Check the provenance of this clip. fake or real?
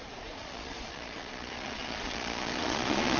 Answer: fake